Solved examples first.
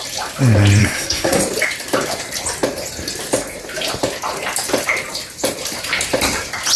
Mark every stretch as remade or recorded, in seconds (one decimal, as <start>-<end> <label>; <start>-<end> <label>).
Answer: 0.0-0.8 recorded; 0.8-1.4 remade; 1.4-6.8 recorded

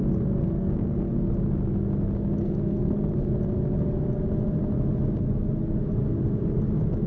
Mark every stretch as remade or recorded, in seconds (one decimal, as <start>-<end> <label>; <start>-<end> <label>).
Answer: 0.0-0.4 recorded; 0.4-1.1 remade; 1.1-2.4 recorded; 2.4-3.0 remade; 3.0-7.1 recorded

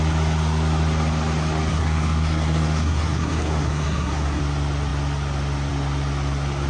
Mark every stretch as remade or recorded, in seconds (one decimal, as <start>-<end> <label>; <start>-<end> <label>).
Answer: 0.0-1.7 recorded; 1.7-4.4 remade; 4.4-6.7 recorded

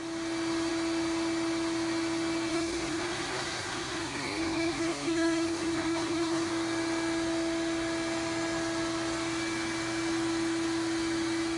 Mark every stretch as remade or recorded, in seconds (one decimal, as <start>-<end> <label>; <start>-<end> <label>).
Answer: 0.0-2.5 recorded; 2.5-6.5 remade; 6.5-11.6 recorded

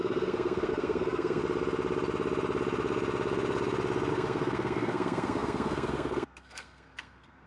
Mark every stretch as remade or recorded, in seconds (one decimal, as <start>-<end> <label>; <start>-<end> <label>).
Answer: 0.0-1.4 remade; 1.4-4.1 recorded; 4.1-7.5 remade